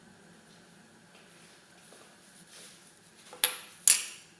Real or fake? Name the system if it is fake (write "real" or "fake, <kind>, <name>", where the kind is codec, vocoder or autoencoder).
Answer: real